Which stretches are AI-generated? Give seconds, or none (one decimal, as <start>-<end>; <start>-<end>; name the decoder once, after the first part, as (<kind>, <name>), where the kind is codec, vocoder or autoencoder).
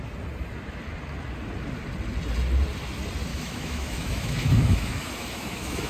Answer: 3.3-5.9 (autoencoder, DAC-VAE)